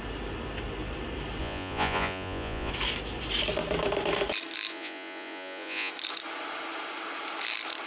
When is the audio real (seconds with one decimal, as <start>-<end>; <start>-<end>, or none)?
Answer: 0.0-1.4; 2.7-4.7; 5.9-7.9